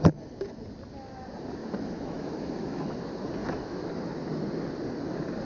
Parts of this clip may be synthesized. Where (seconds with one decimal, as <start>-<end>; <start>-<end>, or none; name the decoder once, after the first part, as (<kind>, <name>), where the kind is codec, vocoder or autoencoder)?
1.6-3.0 (autoencoder, DAC-VAE); 3.4-3.9